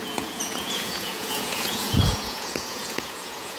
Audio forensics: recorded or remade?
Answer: remade